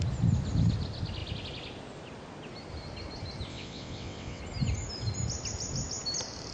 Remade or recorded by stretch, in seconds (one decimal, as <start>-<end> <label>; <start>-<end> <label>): 0.0-3.5 recorded; 3.5-4.4 remade; 4.4-6.5 recorded